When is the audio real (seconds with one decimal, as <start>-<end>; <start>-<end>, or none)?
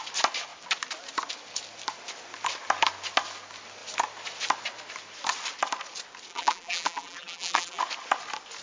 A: 0.0-6.3; 7.8-8.6